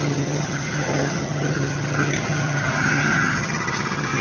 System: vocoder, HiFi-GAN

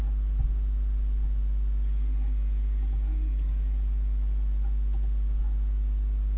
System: none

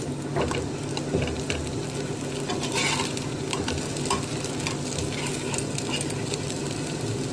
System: none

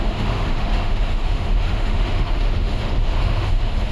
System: autoencoder, DAC-VAE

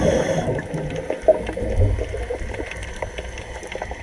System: none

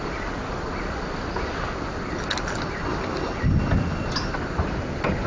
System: none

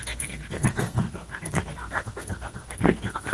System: codec, SNAC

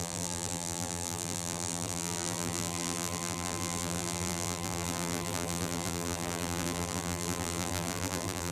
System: vocoder, BigVGAN v2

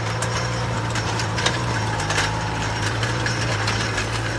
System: vocoder, BigVGAN v2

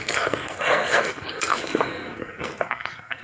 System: codec, SNAC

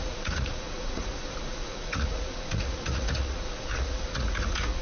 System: vocoder, Vocos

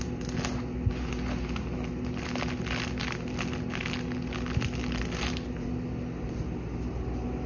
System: none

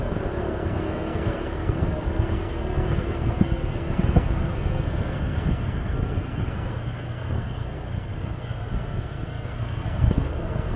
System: codec, SNAC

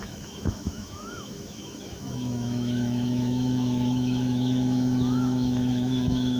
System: autoencoder, DAC-VAE